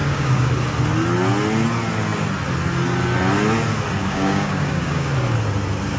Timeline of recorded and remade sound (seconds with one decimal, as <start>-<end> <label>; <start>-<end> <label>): 0.0-0.5 remade; 0.5-4.0 recorded; 4.0-5.1 remade; 5.1-6.0 recorded